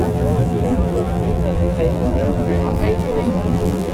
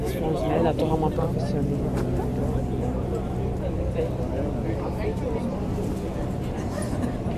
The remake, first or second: first